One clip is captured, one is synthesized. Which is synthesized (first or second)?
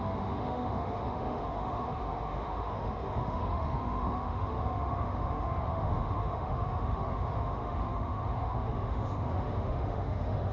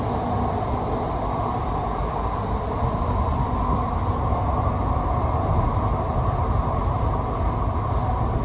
first